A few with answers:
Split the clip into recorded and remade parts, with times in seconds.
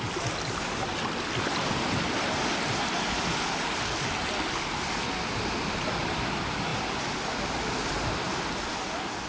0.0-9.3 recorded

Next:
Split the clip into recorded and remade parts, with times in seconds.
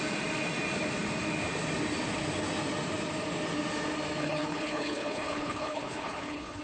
0.0-4.2 recorded; 4.2-6.6 remade